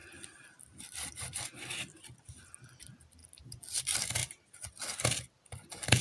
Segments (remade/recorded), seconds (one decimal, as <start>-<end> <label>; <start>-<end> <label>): 0.0-3.2 remade; 3.2-3.8 recorded; 3.8-4.2 remade; 4.2-6.0 recorded